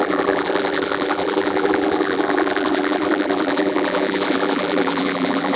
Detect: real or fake fake